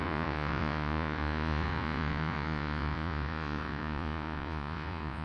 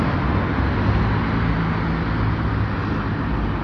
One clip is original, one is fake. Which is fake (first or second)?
first